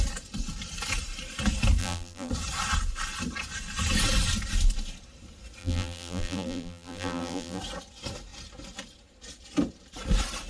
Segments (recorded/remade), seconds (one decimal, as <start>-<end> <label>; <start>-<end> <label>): 0.0-1.8 recorded; 1.8-2.3 remade; 2.3-5.6 recorded; 5.6-7.6 remade; 7.6-10.5 recorded